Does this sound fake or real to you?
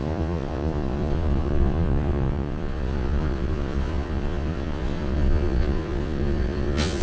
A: fake